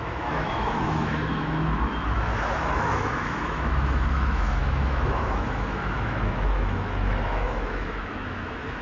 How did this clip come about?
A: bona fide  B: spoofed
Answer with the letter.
B